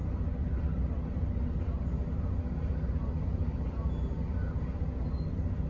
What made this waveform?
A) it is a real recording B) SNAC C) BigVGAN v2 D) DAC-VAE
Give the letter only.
A